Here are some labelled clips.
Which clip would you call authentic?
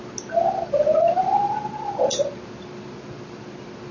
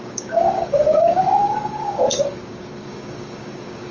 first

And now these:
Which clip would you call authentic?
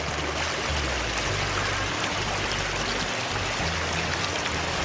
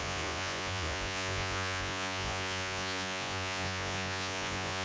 first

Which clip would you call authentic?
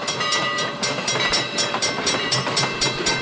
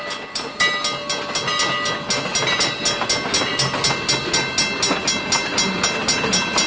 second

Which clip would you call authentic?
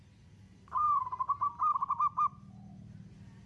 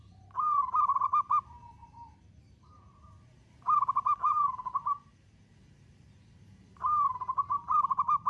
first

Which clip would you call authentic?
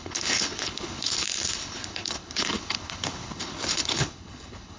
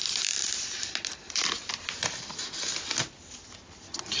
second